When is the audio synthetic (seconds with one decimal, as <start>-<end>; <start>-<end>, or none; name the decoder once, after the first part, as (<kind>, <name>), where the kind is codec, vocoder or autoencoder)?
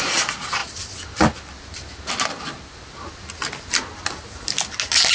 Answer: none